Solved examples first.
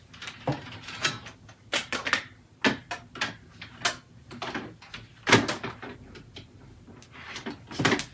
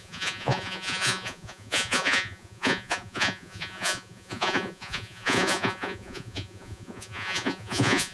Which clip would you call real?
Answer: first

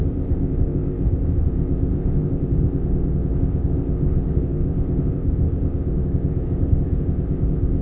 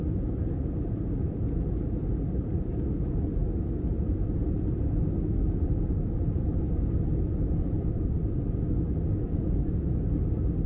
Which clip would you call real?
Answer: second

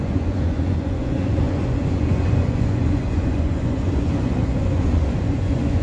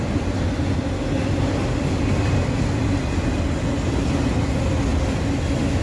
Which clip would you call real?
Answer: second